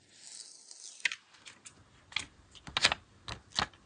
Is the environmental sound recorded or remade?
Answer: recorded